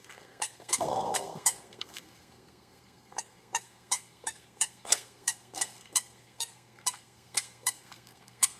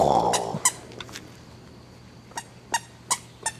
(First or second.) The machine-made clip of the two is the first